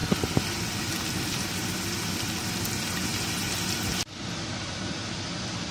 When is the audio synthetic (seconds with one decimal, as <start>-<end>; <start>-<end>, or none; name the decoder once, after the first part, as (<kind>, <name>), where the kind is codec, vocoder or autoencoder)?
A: none